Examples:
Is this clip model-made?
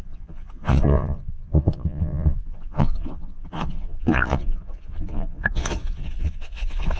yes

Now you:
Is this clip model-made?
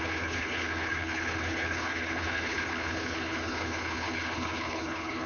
yes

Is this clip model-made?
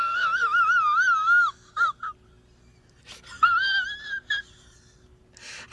no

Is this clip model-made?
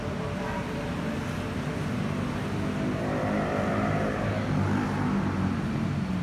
no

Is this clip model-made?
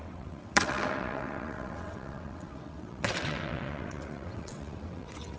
yes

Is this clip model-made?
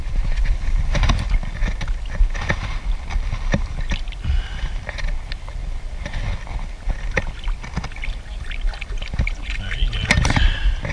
no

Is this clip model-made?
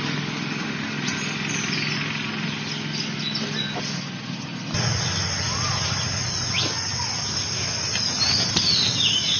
no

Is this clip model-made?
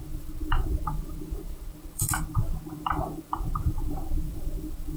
yes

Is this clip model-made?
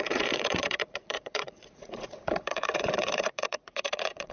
yes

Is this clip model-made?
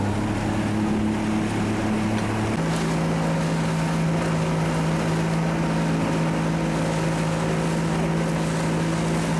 no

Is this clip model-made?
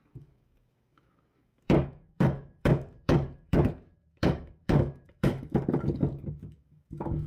yes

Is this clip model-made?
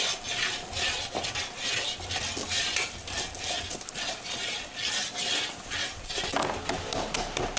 no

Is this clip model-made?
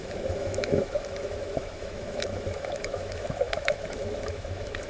yes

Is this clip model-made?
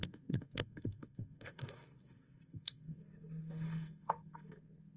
yes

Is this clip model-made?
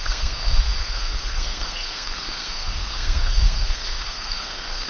yes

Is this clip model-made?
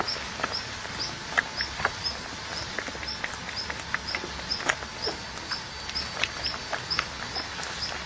no